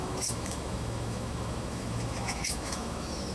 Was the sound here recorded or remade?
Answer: remade